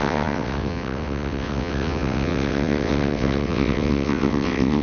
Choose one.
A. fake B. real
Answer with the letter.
A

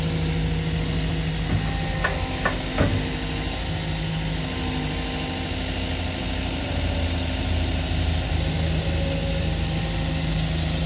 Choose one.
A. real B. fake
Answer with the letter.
A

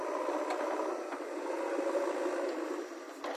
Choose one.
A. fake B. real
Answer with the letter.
B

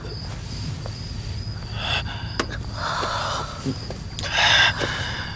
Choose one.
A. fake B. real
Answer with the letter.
B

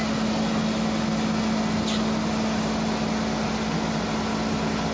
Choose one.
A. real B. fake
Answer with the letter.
A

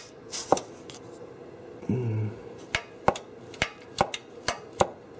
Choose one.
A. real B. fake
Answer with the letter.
A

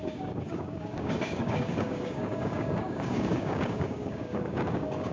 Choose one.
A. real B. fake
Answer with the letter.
B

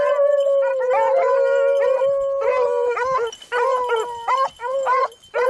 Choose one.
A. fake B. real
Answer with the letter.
B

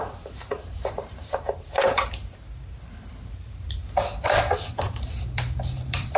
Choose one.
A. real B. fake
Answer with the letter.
B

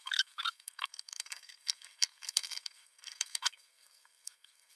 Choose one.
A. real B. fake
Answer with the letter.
B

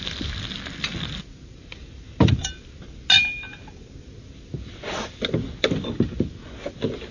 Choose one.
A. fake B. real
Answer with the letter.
B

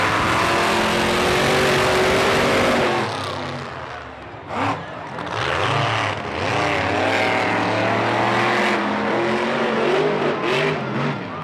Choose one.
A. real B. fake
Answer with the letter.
A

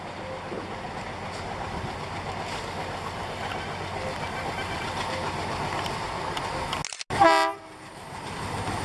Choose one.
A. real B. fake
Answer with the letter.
A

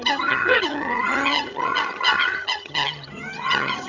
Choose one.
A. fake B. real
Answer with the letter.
A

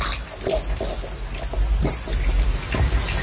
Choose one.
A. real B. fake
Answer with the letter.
A